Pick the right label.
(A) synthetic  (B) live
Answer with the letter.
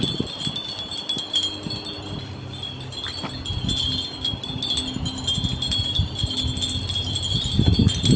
B